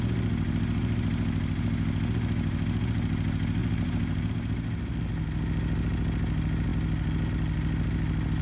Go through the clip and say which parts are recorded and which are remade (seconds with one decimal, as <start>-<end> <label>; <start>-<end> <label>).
0.0-3.6 recorded; 3.6-4.3 remade; 4.3-8.4 recorded